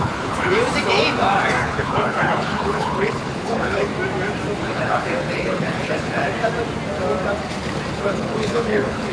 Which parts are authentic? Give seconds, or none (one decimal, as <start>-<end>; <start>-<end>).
0.5-1.6; 3.9-4.6; 6.2-8.0